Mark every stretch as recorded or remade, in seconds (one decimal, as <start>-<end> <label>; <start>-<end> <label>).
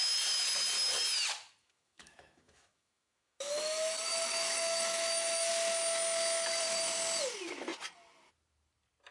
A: 0.0-1.6 recorded; 1.6-5.5 remade; 5.5-9.1 recorded